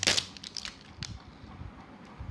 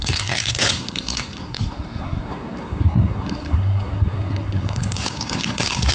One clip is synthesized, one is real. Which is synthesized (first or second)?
second